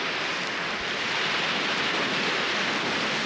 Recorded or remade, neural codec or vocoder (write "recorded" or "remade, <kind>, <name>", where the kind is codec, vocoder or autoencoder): recorded